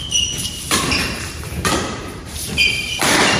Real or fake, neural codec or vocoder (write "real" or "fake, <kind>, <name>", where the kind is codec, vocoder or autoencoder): fake, vocoder, BigVGAN v2